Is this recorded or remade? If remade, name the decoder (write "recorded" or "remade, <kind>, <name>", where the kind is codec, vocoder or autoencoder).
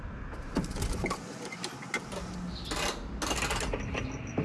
recorded